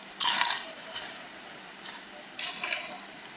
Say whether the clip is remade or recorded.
recorded